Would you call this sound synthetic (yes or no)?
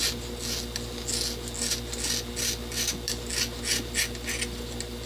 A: no